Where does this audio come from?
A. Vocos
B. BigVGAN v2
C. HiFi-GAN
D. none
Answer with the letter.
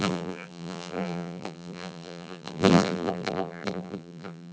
B